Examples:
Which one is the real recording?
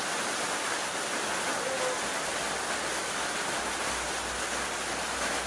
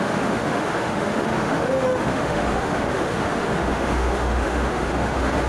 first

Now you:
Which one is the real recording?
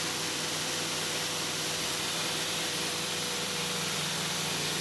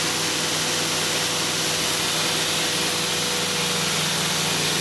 second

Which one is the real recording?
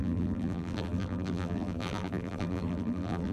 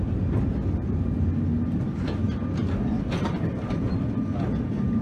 second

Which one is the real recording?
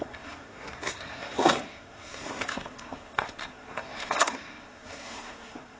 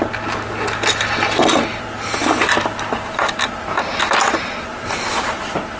second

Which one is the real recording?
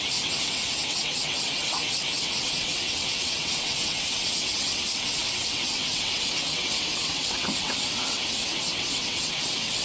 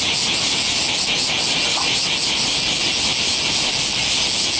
second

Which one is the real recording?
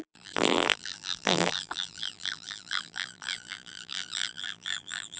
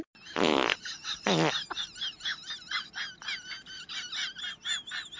second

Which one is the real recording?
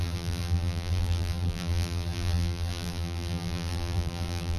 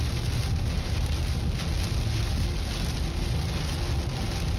second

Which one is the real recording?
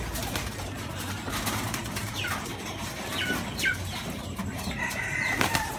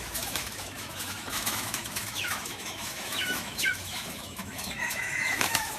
first